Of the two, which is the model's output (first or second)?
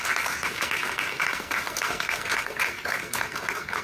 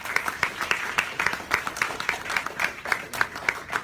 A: first